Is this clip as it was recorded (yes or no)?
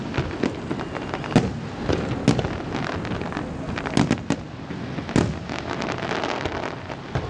yes